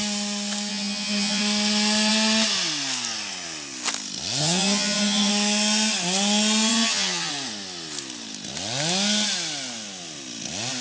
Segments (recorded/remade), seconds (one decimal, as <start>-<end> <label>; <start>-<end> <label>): 0.0-0.7 recorded; 0.7-1.4 remade; 1.4-4.4 recorded; 4.4-5.3 remade; 5.3-6.7 recorded; 6.7-7.3 remade; 7.3-10.8 recorded